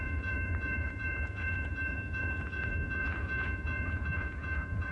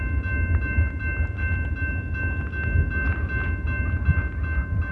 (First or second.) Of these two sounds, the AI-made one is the first